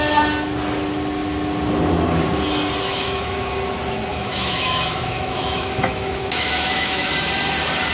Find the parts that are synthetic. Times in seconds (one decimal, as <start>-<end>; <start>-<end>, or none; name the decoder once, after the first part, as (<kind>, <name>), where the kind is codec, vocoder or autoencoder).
2.9-3.5 (autoencoder, DAC-VAE); 4.1-7.1